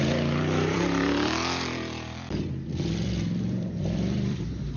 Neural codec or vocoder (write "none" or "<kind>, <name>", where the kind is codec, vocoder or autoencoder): vocoder, BigVGAN v2